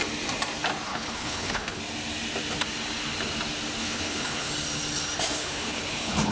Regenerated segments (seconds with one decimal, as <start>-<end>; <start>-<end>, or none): 0.9-1.8; 3.8-4.5; 5.4-6.3